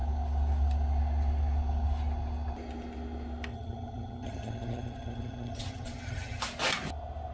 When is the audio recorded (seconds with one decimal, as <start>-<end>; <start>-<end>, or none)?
0.0-3.5; 6.4-7.3